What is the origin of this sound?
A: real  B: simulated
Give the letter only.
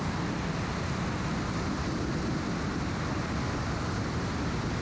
A